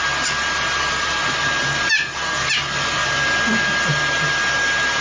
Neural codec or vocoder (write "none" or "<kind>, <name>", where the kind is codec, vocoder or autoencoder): none